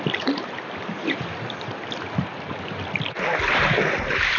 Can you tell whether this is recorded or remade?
recorded